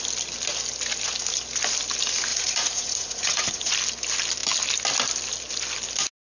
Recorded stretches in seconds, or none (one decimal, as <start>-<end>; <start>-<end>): 0.0-2.3; 3.7-6.2